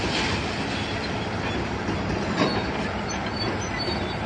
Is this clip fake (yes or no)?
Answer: no